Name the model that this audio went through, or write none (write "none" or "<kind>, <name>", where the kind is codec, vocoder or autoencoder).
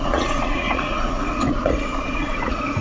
vocoder, Vocos